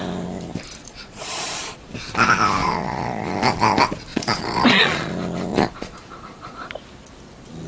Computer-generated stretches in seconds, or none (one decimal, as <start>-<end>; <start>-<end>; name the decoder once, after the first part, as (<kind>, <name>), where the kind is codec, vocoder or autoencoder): 0.8-1.9 (vocoder, Vocos); 2.6-3.3; 4.1-5.1; 5.5-6.7